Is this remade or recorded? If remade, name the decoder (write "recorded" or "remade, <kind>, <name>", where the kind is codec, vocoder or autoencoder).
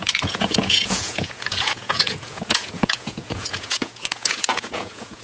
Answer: remade, vocoder, Vocos